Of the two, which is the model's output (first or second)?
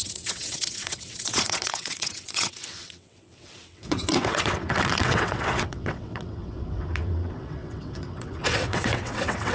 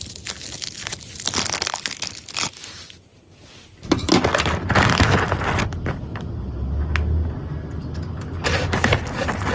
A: first